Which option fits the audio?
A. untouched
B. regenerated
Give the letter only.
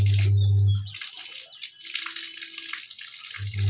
A